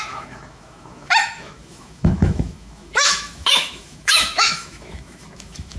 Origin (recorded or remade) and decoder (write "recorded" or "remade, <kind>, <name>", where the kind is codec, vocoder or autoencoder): remade, autoencoder, DAC-VAE